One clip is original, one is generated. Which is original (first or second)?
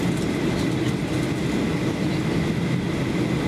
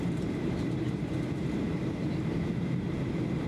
first